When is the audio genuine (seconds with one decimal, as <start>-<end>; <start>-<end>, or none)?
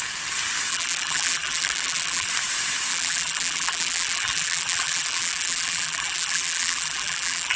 0.0-0.7; 2.3-2.9